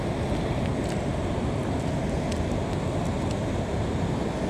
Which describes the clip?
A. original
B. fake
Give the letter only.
A